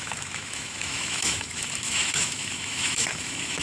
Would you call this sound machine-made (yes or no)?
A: yes